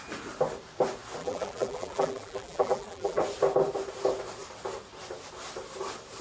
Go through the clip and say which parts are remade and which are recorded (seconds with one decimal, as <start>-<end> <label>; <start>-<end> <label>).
0.0-1.2 recorded; 1.2-3.2 remade; 3.2-6.2 recorded